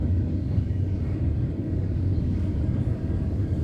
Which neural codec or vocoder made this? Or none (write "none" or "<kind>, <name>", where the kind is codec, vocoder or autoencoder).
codec, DAC